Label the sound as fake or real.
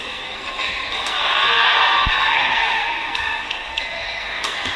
fake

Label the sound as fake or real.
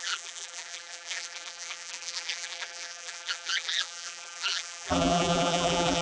fake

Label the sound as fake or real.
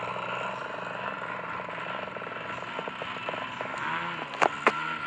real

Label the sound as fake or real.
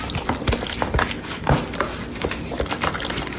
real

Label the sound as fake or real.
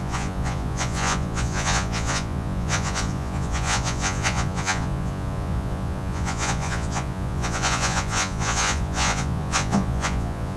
fake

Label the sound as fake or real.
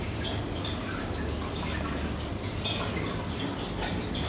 real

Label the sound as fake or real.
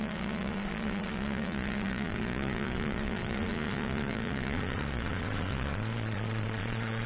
fake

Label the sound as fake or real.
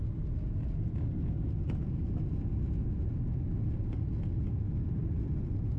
real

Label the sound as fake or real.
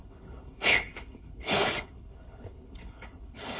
fake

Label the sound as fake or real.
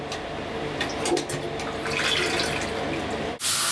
real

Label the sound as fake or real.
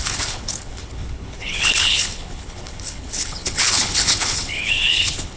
fake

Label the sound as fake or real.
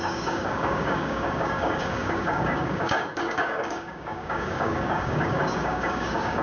fake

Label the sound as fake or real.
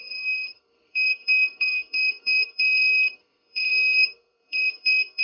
fake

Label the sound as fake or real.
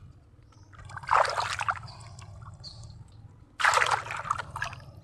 real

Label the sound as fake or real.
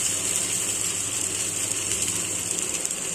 fake